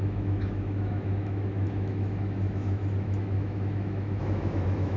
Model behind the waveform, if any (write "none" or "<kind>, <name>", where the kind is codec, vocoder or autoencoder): autoencoder, DAC-VAE